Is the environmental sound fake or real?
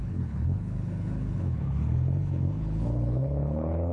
fake